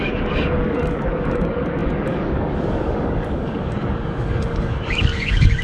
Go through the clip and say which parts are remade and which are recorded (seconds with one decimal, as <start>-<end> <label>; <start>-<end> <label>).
0.0-5.6 remade